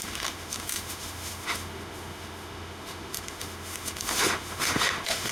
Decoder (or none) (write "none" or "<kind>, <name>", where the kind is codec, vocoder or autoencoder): autoencoder, DAC-VAE